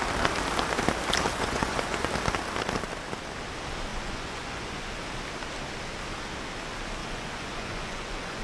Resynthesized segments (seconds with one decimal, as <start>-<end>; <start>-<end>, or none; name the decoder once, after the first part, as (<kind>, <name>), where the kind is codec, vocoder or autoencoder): 1.3-2.1 (vocoder, Vocos); 3.9-5.0; 7.0-8.4